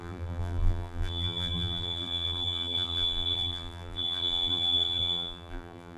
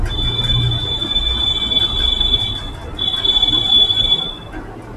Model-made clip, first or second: first